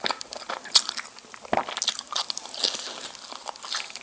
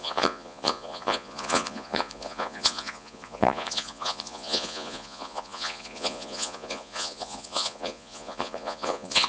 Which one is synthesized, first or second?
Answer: second